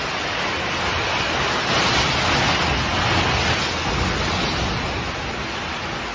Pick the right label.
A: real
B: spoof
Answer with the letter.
A